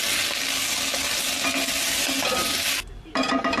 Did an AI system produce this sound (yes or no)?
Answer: no